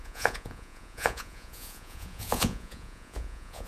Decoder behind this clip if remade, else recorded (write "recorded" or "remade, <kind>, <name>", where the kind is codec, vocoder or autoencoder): remade, vocoder, Vocos